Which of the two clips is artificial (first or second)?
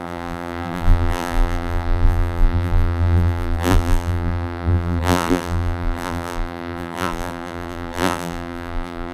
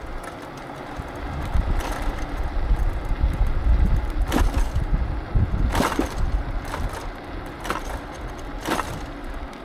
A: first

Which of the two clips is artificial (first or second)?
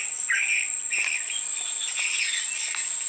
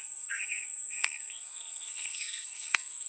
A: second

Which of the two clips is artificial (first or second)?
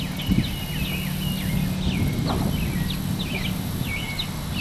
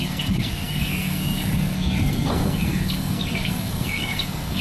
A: second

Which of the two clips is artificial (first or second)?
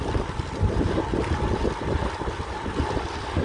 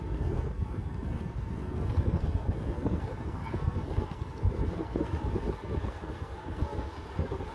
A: second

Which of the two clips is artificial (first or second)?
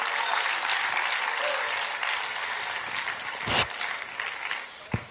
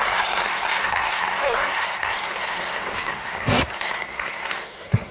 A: second